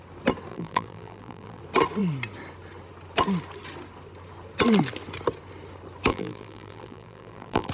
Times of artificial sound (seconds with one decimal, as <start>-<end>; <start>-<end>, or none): 0.5-1.6; 6.1-7.7